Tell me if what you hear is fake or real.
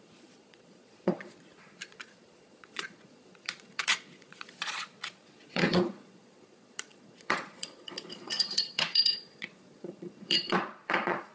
fake